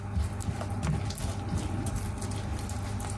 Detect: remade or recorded recorded